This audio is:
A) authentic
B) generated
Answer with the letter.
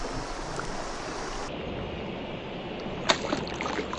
A